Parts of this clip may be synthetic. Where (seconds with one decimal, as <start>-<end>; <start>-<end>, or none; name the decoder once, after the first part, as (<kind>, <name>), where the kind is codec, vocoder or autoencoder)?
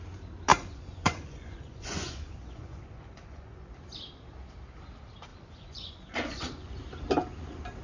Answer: 0.5-3.7 (vocoder, Vocos); 5.3-6.8